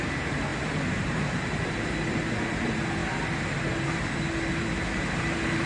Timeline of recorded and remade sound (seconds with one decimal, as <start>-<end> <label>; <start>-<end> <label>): 0.0-3.0 remade; 3.0-4.5 recorded; 4.5-5.7 remade